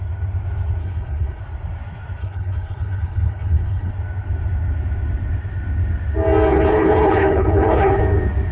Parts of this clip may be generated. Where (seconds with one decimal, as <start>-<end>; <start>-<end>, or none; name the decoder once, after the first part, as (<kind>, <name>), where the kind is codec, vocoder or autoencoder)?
0.8-1.4 (codec, HILCodec); 2.2-3.9; 6.5-8.0